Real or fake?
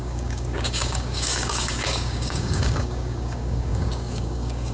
fake